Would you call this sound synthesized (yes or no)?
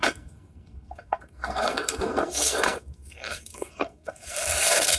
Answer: yes